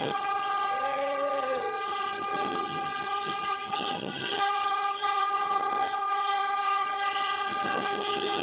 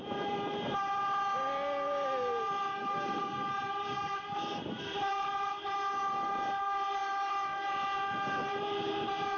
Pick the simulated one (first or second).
first